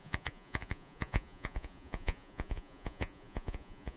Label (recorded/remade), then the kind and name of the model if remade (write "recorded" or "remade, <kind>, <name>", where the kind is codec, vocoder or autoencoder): remade, vocoder, Vocos